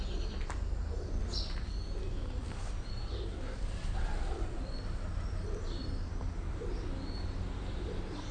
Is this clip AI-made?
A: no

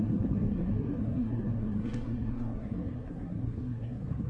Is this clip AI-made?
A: yes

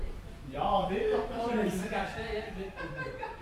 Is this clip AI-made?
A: yes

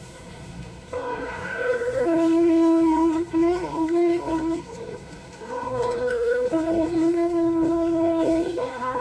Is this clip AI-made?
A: yes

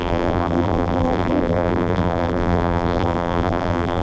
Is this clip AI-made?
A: yes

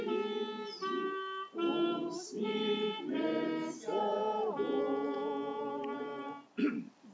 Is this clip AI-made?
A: no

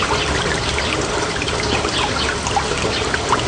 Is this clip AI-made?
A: no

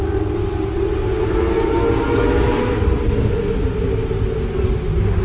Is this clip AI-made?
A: no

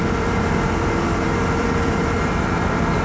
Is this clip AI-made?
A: yes